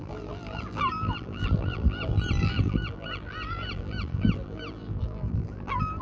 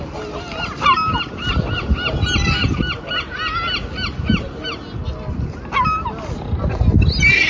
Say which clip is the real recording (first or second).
second